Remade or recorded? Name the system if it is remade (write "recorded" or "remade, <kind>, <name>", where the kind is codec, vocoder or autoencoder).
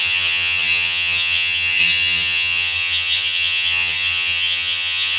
remade, vocoder, HiFi-GAN